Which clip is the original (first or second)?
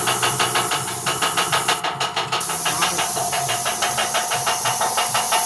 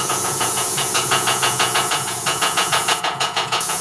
first